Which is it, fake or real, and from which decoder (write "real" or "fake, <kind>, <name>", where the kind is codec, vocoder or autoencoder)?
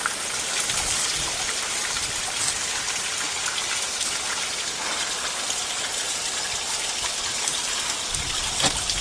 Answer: real